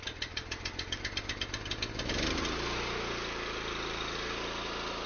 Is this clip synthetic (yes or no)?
no